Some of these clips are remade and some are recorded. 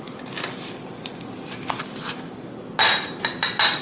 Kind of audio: recorded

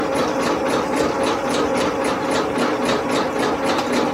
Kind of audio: recorded